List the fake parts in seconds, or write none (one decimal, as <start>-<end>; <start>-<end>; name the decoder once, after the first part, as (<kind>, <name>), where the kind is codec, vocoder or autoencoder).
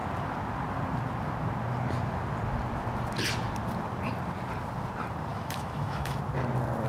5.3-6.2 (autoencoder, DAC-VAE)